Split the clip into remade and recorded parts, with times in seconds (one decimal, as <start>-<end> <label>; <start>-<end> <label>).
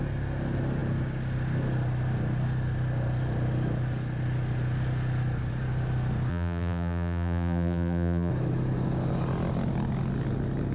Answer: 0.0-6.3 recorded; 6.3-8.3 remade; 8.3-10.7 recorded